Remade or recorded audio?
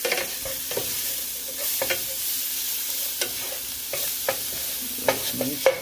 recorded